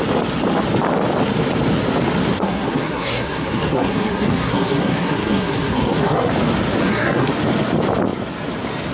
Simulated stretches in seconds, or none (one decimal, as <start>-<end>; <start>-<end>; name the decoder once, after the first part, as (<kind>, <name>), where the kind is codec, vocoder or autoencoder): 2.3-6.3 (codec, SNAC); 6.8-7.3